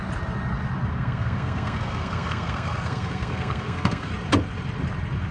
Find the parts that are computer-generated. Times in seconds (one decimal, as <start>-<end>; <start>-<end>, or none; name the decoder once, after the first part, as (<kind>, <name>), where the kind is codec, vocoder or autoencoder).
0.9-4.1 (codec, SNAC)